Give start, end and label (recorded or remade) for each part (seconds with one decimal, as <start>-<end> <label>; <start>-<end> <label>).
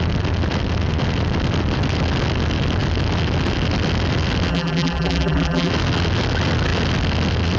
0.0-4.5 recorded; 4.5-5.7 remade; 5.7-7.6 recorded